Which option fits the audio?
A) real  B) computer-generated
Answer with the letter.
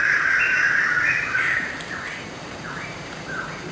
B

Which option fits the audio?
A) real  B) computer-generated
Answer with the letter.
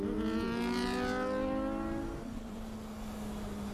A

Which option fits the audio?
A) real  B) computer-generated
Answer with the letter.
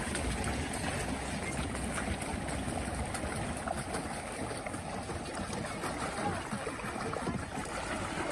A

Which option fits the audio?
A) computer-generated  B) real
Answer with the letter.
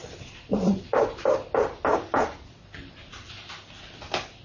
A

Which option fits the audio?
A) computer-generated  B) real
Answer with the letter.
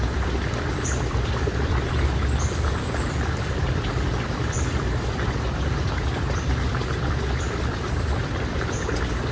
A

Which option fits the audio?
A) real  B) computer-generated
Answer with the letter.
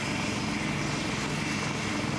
A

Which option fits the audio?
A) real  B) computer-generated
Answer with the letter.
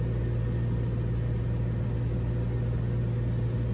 A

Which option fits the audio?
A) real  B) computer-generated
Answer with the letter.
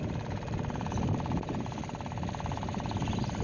B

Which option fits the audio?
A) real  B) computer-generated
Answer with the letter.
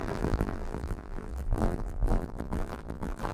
B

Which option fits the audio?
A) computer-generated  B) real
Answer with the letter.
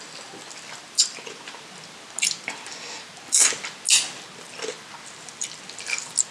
B